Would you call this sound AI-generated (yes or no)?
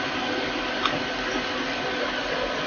no